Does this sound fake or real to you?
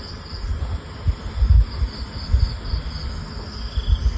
real